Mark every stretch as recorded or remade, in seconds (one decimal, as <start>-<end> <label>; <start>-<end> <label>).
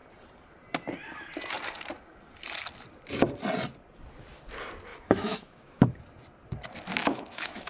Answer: 0.0-4.9 recorded; 4.9-5.9 remade; 5.9-7.0 recorded; 7.0-7.7 remade